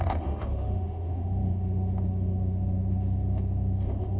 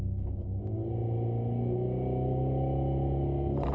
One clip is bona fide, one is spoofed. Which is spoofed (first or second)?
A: first